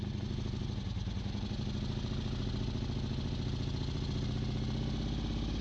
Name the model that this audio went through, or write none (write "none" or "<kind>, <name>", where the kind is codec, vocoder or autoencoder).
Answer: none